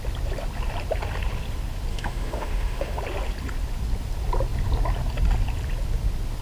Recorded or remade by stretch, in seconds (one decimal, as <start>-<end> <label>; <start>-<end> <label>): 0.0-1.9 recorded; 1.9-3.0 remade; 3.0-6.4 recorded

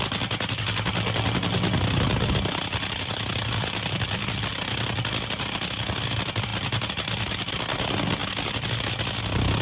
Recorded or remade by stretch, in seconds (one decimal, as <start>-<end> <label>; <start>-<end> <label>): 0.0-9.6 recorded

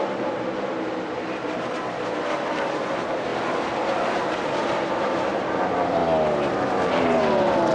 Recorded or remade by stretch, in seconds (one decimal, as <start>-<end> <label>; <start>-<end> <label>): 0.0-3.3 remade; 3.3-3.9 recorded; 3.9-6.0 remade; 6.0-6.5 recorded; 6.5-7.7 remade

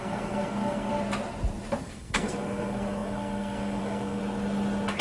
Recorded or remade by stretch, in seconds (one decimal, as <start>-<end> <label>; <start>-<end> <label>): 0.0-0.9 remade; 0.9-1.8 recorded; 1.8-4.2 remade; 4.2-5.0 recorded

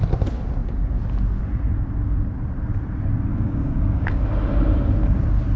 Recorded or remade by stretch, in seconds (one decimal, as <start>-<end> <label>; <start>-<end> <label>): 0.0-3.3 recorded; 3.3-4.2 remade; 4.2-5.6 recorded

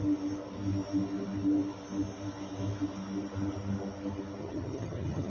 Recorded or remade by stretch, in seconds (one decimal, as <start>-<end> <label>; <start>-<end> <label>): 0.0-4.4 recorded; 4.4-5.3 remade

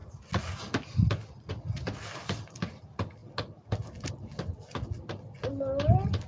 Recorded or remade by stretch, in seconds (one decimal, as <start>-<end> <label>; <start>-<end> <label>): 0.0-6.3 recorded

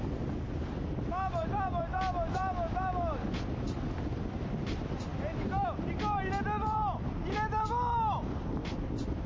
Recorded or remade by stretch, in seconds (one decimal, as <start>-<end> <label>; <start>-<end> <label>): 0.0-9.3 recorded